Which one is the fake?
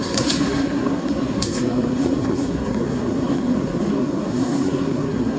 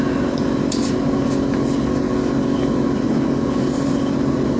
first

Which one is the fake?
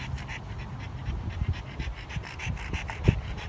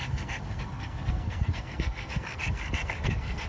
second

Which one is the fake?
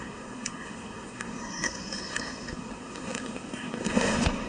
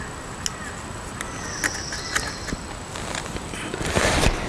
first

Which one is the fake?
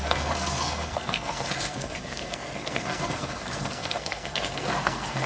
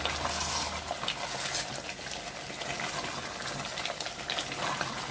first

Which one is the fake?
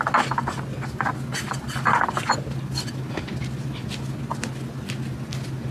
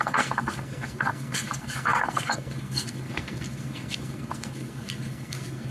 second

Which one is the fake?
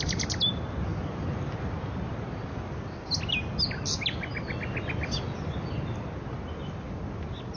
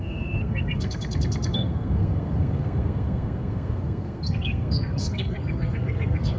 second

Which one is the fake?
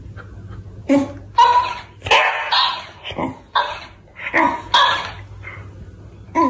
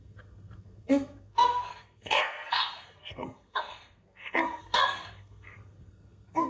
second